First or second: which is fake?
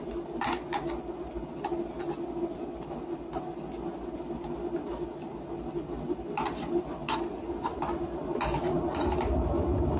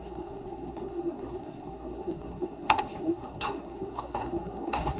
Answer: second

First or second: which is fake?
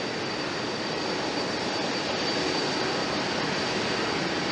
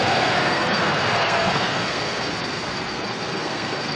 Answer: second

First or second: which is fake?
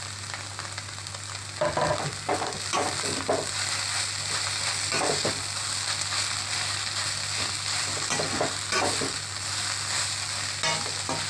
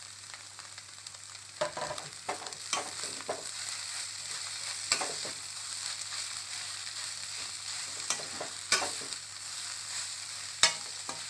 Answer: second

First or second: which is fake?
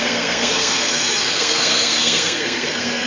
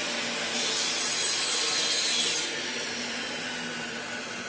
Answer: first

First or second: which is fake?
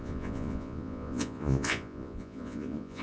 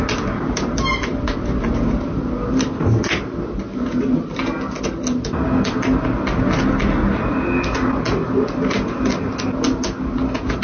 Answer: first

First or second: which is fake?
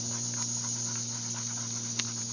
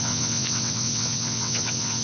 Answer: second